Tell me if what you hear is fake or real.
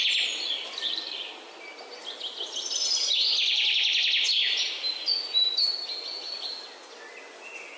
real